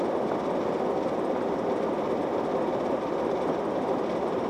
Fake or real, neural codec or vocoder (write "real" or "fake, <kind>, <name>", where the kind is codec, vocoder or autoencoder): real